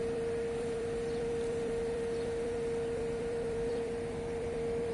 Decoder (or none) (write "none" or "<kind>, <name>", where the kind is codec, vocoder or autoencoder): vocoder, BigVGAN v2